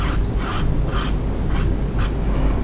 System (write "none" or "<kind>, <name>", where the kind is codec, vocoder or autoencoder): none